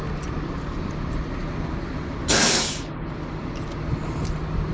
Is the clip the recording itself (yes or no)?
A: yes